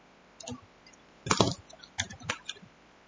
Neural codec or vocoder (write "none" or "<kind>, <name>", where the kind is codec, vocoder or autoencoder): none